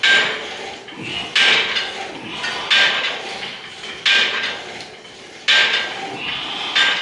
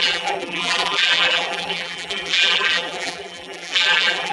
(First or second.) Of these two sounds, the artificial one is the second